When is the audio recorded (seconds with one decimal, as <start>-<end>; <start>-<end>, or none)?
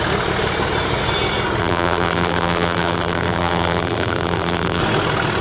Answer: 0.0-1.6; 4.8-5.4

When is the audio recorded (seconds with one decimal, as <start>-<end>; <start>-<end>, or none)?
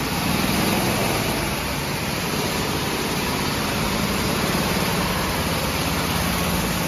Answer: 0.0-1.0; 5.1-6.9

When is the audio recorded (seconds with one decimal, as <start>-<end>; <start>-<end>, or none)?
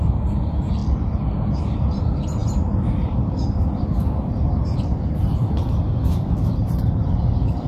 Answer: 0.0-2.4; 4.0-7.7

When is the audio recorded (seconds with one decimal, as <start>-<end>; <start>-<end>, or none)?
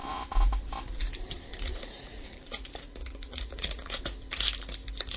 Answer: 0.0-1.5; 4.0-5.2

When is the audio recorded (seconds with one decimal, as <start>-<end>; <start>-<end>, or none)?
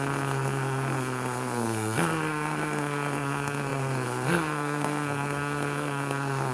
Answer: none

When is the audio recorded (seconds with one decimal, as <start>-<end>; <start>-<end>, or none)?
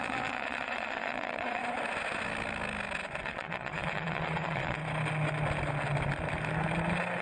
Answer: 1.6-3.2; 4.8-7.2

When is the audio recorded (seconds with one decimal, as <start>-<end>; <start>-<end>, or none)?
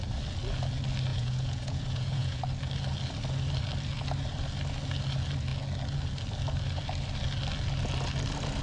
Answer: 0.0-1.1; 2.4-8.6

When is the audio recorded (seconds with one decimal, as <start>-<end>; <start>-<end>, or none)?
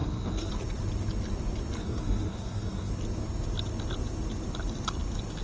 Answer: 0.5-1.8; 2.9-5.4